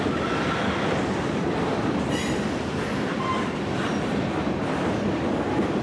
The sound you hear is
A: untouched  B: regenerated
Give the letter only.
A